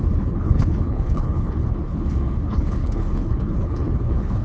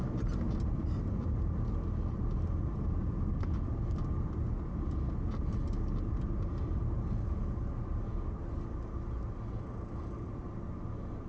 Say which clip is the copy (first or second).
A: first